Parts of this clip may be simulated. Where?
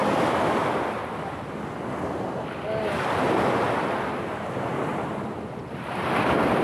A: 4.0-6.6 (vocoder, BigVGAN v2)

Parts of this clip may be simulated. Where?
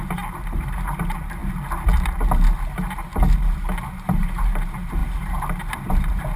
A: 0.0-1.4 (vocoder, BigVGAN v2); 3.8-6.4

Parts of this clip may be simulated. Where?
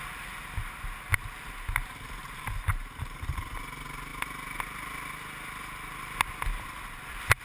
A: 2.2-3.4 (vocoder, BigVGAN v2)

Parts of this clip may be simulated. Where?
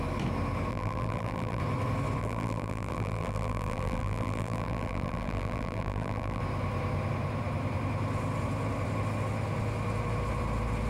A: 0.7-1.6 (vocoder, BigVGAN v2); 2.2-6.4